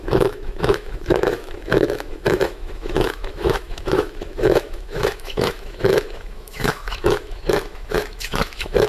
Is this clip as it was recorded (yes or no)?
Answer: no